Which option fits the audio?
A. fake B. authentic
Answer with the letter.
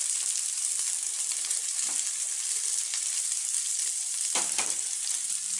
A